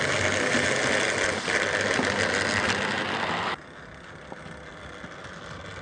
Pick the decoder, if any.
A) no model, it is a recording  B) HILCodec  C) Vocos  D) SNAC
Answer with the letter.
A